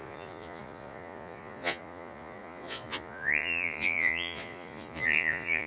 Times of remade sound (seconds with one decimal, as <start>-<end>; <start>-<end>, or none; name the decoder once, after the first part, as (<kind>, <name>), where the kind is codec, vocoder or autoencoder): 0.0-5.7 (vocoder, Vocos)